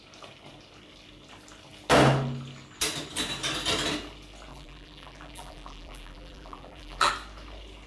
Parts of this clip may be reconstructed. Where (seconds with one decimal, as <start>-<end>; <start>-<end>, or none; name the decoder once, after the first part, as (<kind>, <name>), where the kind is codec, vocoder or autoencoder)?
4.5-7.1 (vocoder, BigVGAN v2)